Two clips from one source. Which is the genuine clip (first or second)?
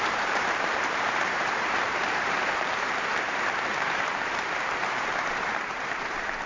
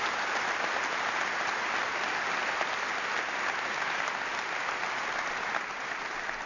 second